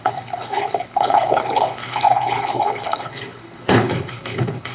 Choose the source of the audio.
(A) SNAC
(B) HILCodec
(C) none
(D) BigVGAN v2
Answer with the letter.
B